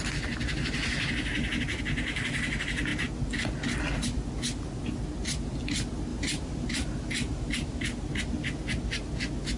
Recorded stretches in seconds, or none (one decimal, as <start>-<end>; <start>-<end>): 0.0-6.1; 7.7-9.6

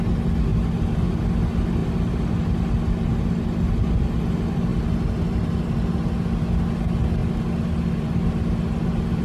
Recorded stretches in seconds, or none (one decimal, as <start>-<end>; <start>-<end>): 0.0-9.2

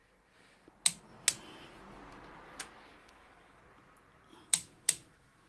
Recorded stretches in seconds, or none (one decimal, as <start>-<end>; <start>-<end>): 0.0-3.0; 3.6-4.3

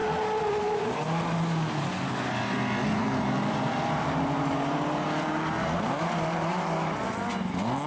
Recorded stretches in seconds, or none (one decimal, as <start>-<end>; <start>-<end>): 0.0-3.0; 7.3-7.9

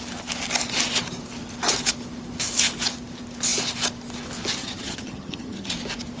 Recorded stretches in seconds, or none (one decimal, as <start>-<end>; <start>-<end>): 0.0-4.6; 5.7-6.2

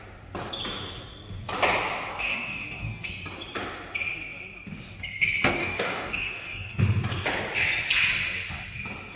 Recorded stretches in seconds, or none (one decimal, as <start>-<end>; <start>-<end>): 0.0-2.1; 3.1-5.6; 6.8-9.2

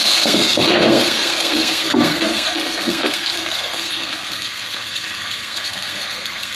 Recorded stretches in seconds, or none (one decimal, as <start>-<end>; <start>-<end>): none

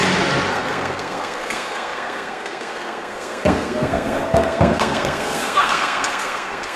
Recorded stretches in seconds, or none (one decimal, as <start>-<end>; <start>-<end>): 0.0-0.5